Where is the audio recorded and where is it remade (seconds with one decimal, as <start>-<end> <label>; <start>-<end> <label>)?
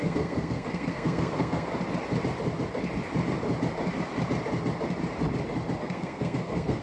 0.0-1.7 remade; 1.7-5.8 recorded; 5.8-6.8 remade